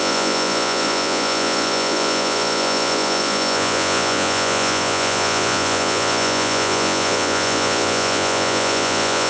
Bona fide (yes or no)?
no